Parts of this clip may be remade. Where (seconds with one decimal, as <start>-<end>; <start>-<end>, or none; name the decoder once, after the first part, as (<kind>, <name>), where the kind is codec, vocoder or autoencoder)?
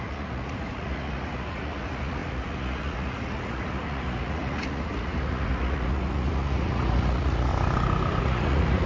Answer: 0.0-7.5 (vocoder, Vocos); 8.2-8.9